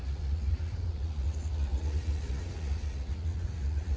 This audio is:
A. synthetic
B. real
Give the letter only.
A